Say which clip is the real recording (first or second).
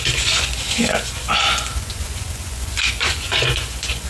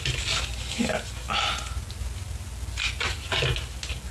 second